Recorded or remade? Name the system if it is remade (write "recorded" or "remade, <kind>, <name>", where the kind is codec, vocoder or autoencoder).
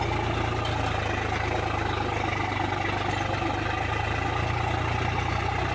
recorded